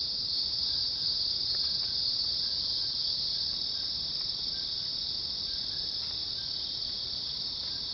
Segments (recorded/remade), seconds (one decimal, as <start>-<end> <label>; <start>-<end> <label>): 0.0-7.9 recorded